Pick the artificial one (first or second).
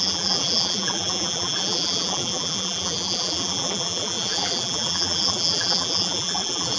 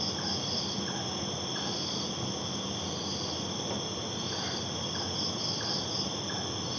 first